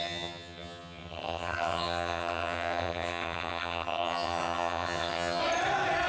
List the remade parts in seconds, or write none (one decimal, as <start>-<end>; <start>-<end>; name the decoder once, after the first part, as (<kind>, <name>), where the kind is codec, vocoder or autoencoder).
0.0-5.4 (vocoder, HiFi-GAN)